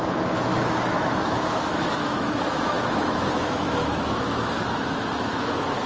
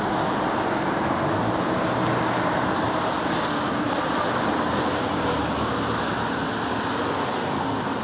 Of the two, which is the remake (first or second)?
first